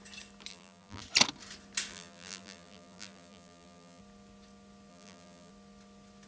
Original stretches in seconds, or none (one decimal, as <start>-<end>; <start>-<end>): 0.0-0.5; 1.0-1.9; 4.0-4.9; 5.5-6.3